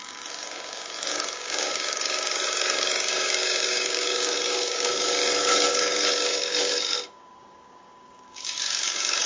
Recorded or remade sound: remade